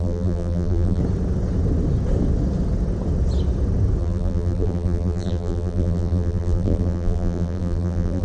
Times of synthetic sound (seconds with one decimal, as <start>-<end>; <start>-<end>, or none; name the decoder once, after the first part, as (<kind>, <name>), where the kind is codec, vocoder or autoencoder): 0.0-1.0 (vocoder, BigVGAN v2); 4.0-8.2